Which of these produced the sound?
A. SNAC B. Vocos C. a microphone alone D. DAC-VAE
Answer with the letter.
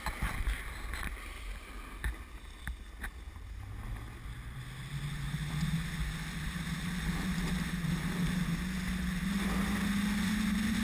C